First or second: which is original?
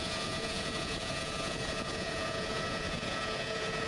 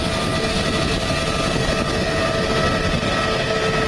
second